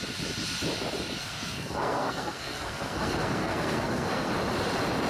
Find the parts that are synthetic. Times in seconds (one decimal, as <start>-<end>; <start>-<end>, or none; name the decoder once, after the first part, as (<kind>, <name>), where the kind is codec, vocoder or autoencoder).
1.2-4.3 (codec, SNAC)